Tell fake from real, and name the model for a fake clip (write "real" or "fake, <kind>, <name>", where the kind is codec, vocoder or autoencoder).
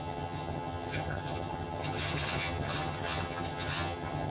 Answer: fake, vocoder, HiFi-GAN